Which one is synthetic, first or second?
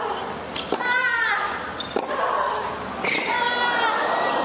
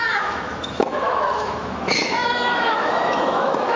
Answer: second